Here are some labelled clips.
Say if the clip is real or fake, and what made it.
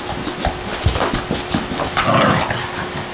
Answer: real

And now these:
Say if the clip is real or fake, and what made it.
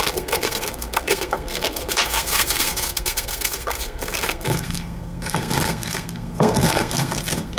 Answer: fake, codec, SNAC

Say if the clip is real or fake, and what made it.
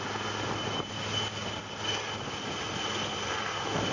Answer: real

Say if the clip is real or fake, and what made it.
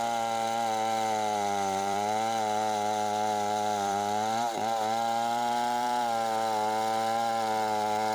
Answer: fake, vocoder, BigVGAN v2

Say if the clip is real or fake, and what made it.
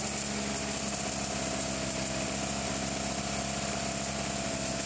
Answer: real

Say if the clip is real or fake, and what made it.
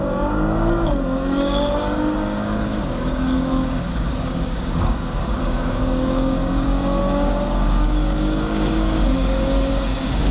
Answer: fake, codec, DAC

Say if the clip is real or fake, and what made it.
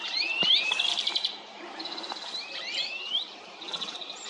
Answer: fake, vocoder, BigVGAN v2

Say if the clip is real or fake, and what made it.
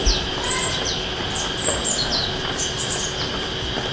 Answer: real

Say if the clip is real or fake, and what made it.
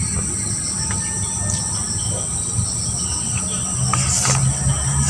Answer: real